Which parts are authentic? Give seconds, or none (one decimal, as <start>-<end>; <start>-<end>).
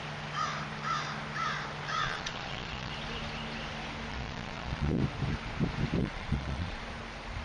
0.0-2.0; 2.9-4.1; 5.0-6.0; 6.8-7.4